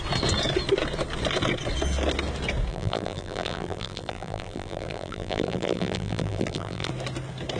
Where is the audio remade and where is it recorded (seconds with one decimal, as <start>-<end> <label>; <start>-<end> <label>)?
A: 0.0-2.7 recorded; 2.7-6.9 remade; 6.9-7.6 recorded